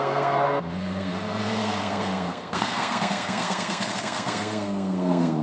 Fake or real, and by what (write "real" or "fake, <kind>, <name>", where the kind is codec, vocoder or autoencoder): fake, codec, SNAC